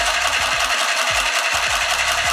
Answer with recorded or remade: remade